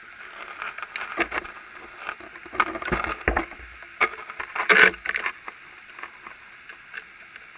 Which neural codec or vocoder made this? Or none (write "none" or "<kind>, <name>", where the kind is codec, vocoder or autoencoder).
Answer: none